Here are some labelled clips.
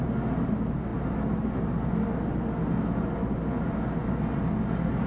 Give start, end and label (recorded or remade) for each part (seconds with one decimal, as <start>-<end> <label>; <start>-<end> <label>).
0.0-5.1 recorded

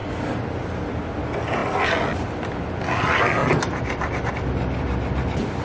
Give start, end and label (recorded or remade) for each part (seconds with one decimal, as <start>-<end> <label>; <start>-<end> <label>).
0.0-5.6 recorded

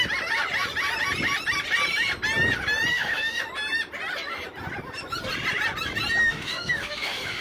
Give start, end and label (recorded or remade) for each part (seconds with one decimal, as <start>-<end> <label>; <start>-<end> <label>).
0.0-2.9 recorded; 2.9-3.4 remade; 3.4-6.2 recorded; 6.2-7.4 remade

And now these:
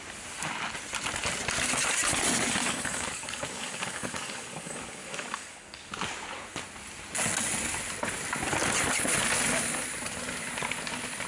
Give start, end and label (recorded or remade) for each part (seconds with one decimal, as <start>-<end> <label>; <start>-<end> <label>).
0.0-2.6 recorded; 2.6-5.9 remade; 5.9-11.3 recorded

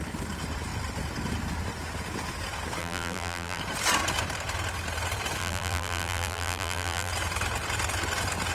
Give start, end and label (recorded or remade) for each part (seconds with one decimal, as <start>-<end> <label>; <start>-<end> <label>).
0.0-2.8 recorded; 2.8-3.6 remade; 3.6-5.4 recorded; 5.4-7.1 remade; 7.1-8.5 recorded

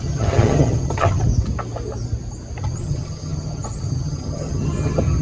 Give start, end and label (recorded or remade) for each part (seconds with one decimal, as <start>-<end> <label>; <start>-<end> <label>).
0.0-1.2 remade; 1.2-2.6 recorded; 2.6-5.2 remade

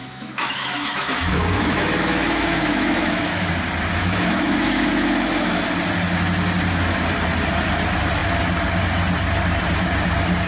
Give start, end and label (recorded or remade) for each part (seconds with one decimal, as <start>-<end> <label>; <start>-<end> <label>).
0.0-3.5 remade; 3.5-4.0 recorded; 4.0-5.6 remade; 5.6-10.5 recorded

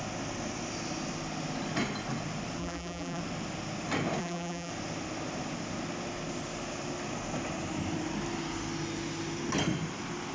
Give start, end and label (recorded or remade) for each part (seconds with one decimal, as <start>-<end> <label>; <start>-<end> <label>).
0.0-2.6 recorded; 2.6-3.2 remade; 3.2-4.2 recorded; 4.2-4.7 remade; 4.7-10.3 recorded